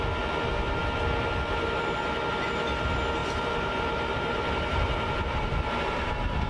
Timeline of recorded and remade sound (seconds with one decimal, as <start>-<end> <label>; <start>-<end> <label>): 0.0-3.2 recorded; 3.2-6.1 remade; 6.1-6.5 recorded